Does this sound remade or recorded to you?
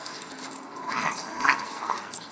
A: remade